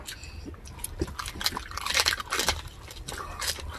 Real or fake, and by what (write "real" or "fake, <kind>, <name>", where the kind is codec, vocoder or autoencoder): real